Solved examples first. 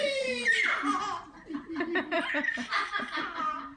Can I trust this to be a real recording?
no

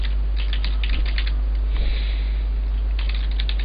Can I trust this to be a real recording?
yes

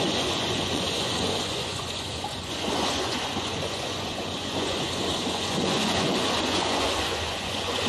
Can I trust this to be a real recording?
no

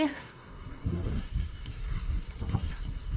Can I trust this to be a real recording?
no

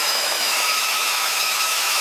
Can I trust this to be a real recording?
no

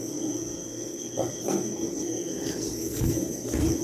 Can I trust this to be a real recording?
no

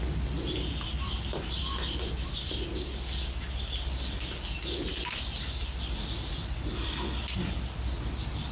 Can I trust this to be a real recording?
yes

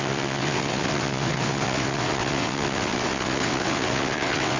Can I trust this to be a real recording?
no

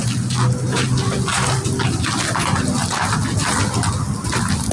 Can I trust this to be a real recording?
yes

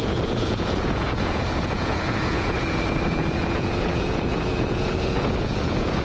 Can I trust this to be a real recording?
no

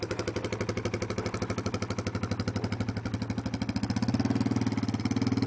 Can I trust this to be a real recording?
yes